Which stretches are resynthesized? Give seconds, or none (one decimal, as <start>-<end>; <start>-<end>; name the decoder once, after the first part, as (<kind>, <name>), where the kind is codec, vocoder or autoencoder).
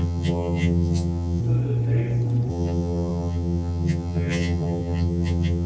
0.0-1.4 (vocoder, HiFi-GAN); 2.5-5.7